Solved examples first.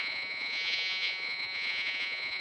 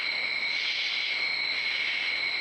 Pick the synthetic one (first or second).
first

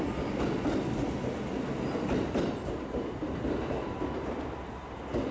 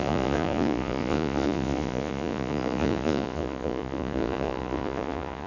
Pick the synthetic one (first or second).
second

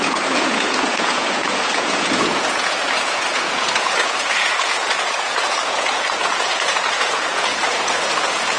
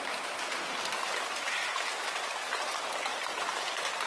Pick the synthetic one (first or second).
first